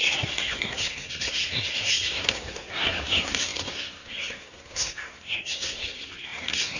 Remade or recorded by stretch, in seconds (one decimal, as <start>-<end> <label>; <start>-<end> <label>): 0.0-6.8 remade